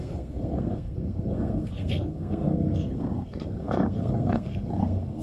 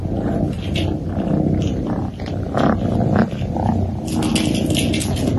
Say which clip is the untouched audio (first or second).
second